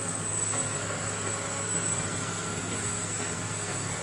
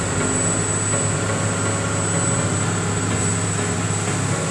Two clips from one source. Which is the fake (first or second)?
first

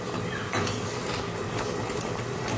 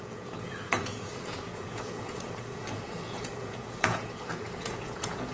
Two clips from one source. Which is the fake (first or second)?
second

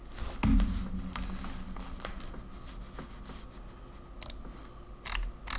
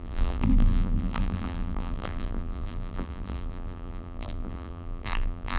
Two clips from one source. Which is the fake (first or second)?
second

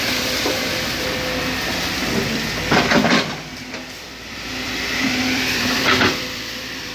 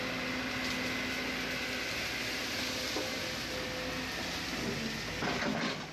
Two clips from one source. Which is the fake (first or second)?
first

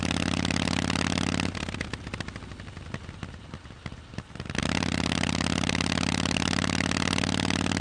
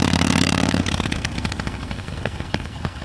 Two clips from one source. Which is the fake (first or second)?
second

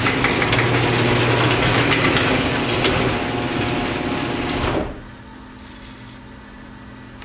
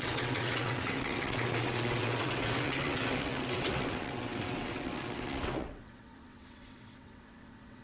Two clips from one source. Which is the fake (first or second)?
second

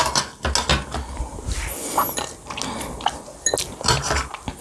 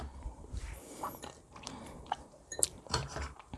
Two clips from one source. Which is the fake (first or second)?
second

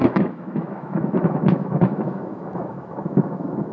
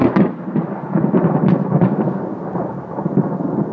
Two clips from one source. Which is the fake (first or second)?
first